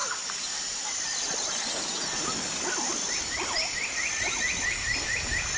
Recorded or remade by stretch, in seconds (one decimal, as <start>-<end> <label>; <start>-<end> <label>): 0.0-5.6 recorded